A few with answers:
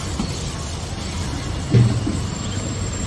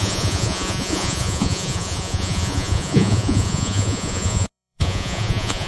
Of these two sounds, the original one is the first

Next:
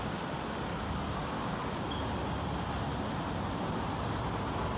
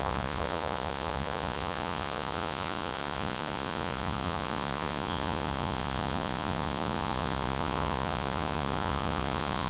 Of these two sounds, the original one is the first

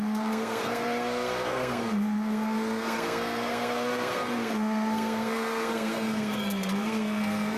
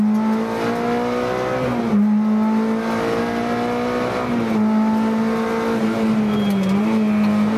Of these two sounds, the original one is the second